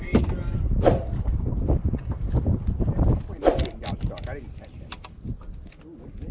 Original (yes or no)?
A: yes